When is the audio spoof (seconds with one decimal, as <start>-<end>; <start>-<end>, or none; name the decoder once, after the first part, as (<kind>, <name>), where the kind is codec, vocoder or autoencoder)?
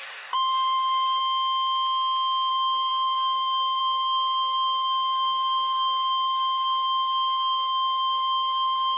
0.0-1.2 (codec, DAC); 2.5-9.0